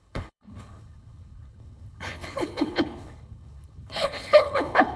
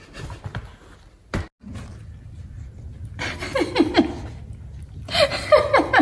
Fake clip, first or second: first